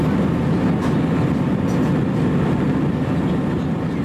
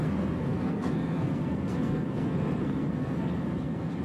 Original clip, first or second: first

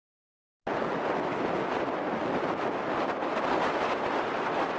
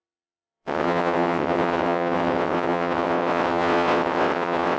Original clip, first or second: first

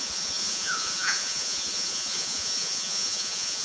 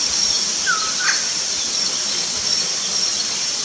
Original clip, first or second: second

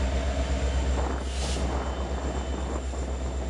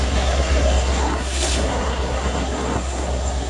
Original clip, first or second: first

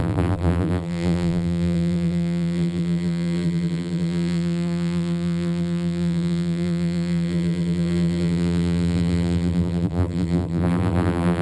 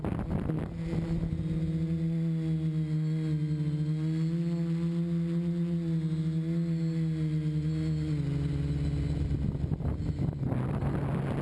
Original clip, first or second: second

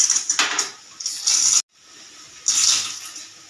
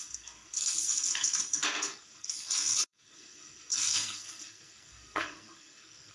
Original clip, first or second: first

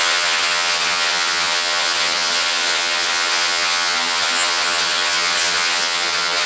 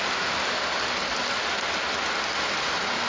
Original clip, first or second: second